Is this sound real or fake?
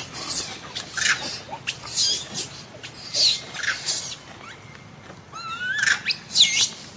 real